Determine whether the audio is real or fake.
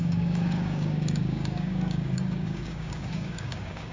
fake